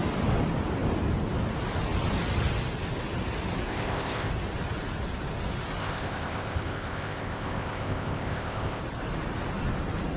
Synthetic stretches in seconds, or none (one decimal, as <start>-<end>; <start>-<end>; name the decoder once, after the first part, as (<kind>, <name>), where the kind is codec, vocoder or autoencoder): 3.7-4.3 (codec, ZipCodec); 5.8-8.8